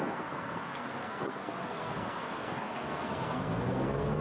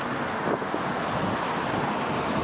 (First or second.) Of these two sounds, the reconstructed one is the first